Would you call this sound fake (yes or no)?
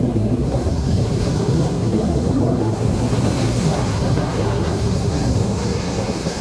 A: yes